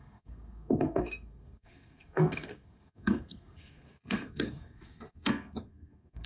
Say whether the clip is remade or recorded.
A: remade